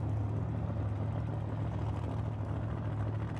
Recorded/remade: recorded